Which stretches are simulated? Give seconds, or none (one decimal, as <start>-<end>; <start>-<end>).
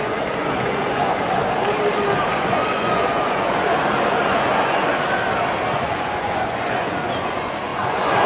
0.0-1.4; 2.3-4.9; 5.7-8.3